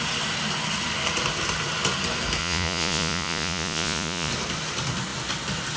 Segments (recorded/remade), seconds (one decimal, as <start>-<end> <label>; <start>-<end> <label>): 0.0-2.4 recorded; 2.4-4.3 remade; 4.3-5.8 recorded